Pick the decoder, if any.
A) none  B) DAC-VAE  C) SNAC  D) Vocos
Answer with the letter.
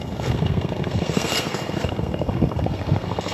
C